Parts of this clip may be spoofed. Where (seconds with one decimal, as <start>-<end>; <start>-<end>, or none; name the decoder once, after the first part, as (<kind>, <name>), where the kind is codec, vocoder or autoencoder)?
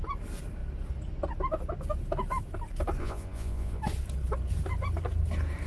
3.0-3.8 (vocoder, Vocos)